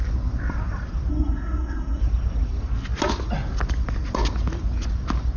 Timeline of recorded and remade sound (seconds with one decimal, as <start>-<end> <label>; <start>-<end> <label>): 0.0-1.1 recorded; 1.1-2.0 remade; 2.0-5.4 recorded